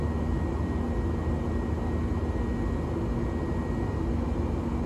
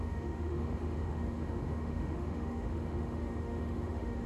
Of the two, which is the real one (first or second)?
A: first